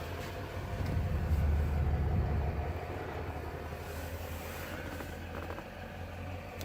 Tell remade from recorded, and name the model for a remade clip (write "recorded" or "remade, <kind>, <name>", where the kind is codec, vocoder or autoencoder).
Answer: recorded